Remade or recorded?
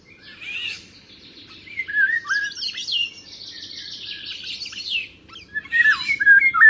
remade